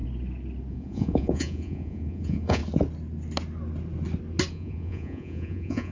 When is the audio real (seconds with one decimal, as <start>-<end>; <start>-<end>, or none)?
0.0-0.7; 2.6-4.5